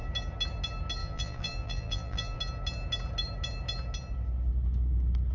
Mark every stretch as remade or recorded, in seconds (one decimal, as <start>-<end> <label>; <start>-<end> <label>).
0.0-1.0 recorded; 1.0-2.4 remade; 2.4-5.3 recorded